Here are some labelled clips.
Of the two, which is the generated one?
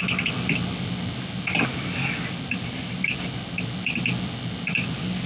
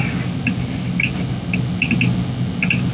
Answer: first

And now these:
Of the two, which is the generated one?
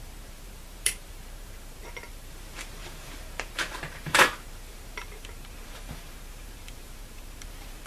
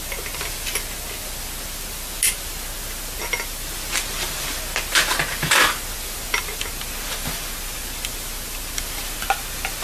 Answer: first